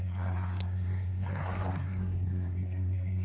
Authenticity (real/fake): fake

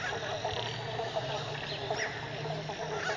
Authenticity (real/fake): real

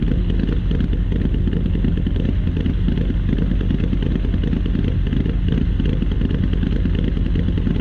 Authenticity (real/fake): real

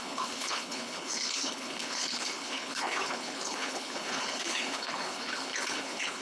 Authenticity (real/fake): fake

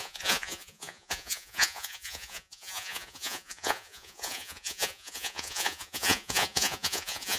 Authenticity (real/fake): fake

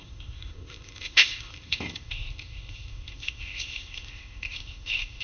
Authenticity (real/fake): fake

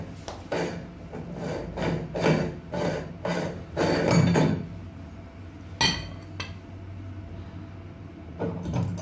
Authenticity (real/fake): real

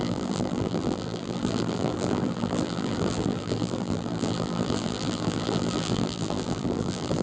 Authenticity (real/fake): fake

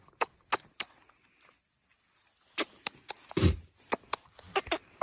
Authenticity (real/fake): real